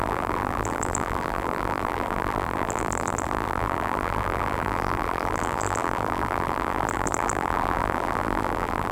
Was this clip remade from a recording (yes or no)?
yes